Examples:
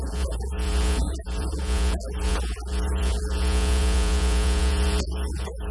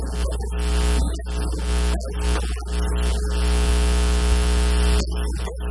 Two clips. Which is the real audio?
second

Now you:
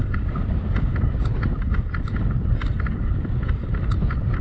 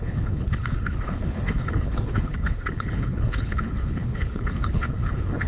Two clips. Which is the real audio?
first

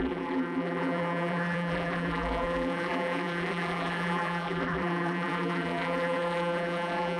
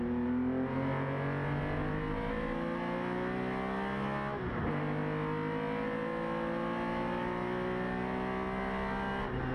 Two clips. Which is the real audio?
second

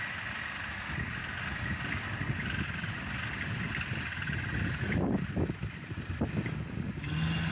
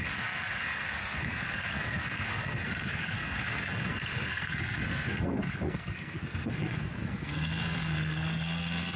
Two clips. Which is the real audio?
first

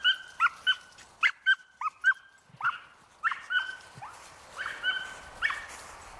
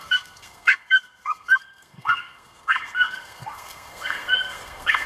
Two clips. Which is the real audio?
first